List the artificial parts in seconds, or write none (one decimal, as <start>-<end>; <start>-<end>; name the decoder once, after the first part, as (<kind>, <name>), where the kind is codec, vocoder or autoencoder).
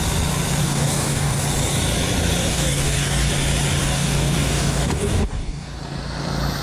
0.6-1.4 (codec, DAC); 2.4-3.3; 3.8-5.8